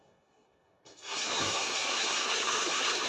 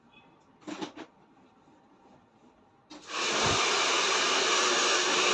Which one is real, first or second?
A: second